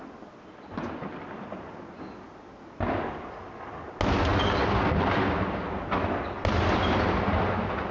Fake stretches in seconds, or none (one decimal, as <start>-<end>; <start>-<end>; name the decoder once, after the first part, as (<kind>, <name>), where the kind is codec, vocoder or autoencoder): none